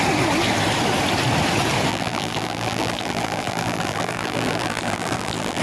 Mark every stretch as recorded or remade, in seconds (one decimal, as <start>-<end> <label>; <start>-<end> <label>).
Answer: 0.0-1.9 recorded; 1.9-5.6 remade